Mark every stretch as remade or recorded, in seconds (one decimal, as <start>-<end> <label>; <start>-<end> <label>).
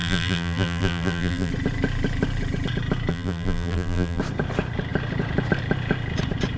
0.0-1.5 remade; 1.5-3.1 recorded; 3.1-4.2 remade; 4.2-6.6 recorded